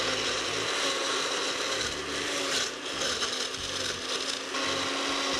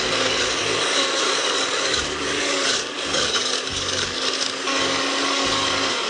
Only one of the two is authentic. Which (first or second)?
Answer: first